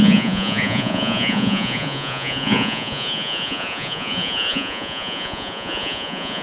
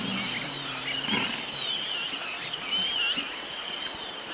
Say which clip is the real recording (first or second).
second